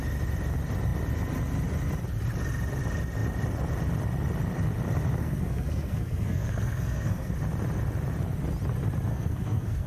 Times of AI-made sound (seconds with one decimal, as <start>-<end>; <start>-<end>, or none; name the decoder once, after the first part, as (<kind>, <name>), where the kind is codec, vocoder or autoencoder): 5.2-7.3 (codec, SNAC); 9.1-9.9